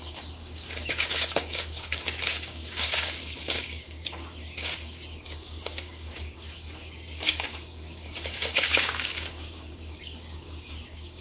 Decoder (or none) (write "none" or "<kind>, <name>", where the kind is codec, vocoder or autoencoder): codec, DAC